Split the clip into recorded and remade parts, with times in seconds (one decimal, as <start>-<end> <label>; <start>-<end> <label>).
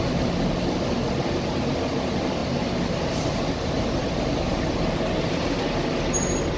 0.0-6.6 recorded